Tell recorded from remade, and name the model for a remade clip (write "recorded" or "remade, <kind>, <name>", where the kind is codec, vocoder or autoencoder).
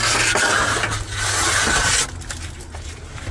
recorded